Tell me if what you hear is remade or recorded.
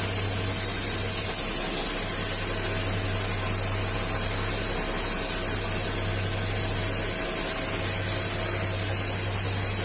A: recorded